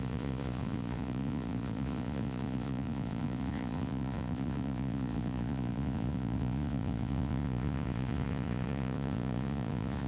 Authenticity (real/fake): fake